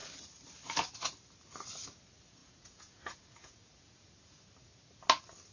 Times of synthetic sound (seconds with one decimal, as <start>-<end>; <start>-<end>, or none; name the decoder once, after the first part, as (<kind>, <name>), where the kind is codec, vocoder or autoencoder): 2.4-4.4 (vocoder, Vocos)